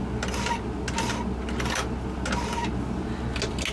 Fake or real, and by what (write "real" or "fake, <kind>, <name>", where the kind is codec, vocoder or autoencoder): real